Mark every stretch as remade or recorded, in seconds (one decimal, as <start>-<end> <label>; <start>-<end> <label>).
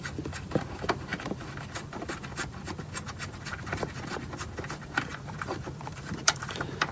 0.0-1.1 recorded; 1.1-2.1 remade; 2.1-5.1 recorded; 5.1-6.9 remade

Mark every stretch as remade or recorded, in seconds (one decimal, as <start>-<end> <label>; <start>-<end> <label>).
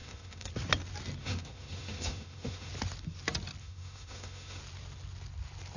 0.0-0.5 remade; 0.5-1.2 recorded; 1.2-2.7 remade; 2.7-3.6 recorded; 3.6-4.6 remade; 4.6-5.8 recorded